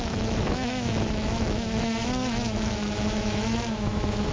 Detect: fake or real fake